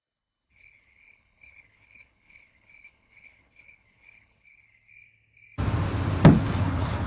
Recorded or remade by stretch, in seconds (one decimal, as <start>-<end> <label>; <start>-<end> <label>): 0.0-4.9 remade; 4.9-6.6 recorded; 6.6-7.1 remade